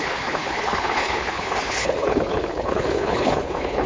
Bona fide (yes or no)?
no